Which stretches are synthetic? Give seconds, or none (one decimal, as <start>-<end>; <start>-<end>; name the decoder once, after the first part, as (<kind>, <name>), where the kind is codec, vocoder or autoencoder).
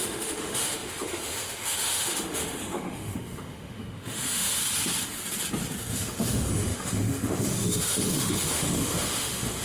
0.0-4.6 (autoencoder, DAC-VAE); 5.9-9.6